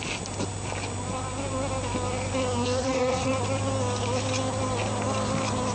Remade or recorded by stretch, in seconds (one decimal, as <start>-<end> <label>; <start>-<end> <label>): 0.0-2.8 recorded; 2.8-3.3 remade; 3.3-5.7 recorded